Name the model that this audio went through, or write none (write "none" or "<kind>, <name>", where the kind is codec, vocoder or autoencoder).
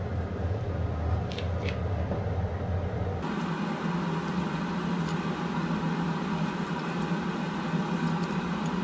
none